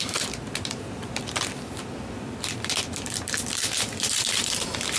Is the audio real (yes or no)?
no